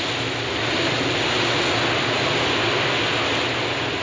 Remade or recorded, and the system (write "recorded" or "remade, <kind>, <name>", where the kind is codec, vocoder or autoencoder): recorded